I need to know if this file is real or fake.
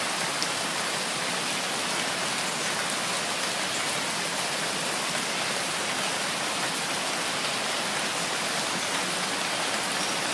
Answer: real